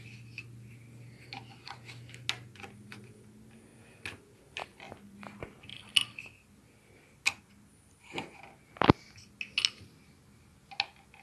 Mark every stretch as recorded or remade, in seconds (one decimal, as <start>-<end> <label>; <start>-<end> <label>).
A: 0.0-11.2 recorded